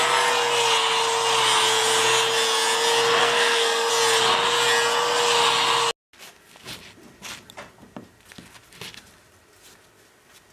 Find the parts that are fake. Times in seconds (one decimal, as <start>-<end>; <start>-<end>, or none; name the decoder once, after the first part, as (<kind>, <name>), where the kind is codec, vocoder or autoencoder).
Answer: 3.2-3.9 (codec, SNAC)